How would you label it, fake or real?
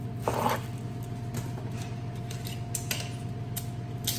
real